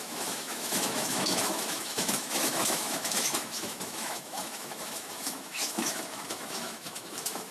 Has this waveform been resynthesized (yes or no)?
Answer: yes